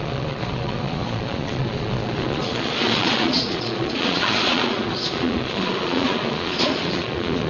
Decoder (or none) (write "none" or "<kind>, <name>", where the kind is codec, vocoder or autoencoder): vocoder, Vocos